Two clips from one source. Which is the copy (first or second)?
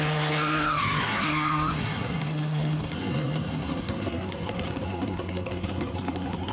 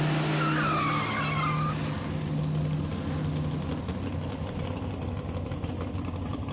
first